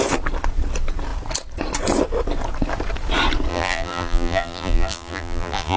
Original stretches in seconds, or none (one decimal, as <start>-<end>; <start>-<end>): 0.0-3.5